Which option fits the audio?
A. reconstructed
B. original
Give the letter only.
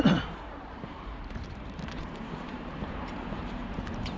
A